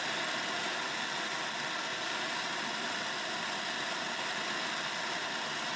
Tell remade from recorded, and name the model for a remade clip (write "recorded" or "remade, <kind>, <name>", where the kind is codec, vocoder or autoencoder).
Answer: recorded